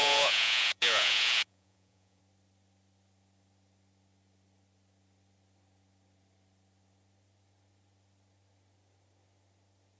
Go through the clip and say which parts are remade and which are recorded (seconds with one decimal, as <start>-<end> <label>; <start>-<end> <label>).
0.0-2.2 remade; 2.2-10.0 recorded